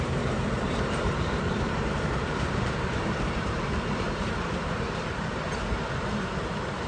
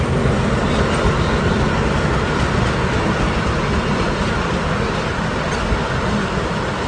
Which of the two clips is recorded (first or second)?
second